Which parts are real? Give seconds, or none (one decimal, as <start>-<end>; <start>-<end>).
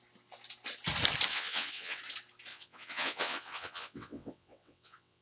0.0-1.3; 2.0-2.5